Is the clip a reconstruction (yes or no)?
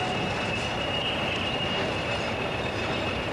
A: no